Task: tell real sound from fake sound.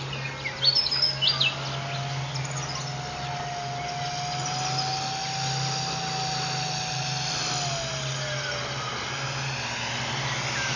real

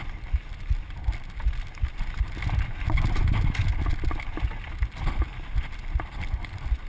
real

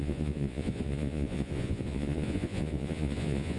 fake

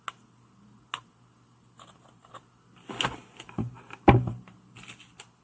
real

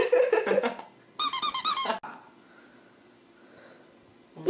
real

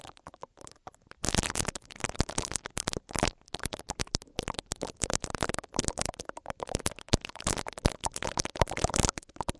real